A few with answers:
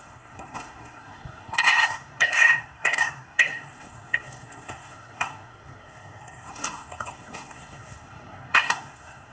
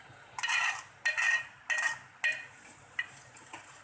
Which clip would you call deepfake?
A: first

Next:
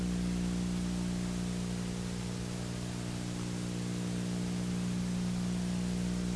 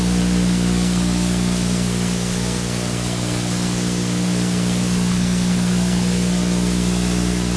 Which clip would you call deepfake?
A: second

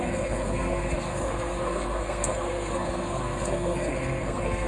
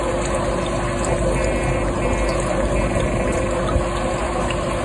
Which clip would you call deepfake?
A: first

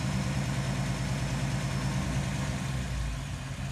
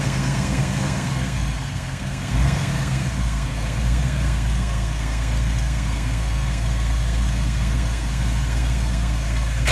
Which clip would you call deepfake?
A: second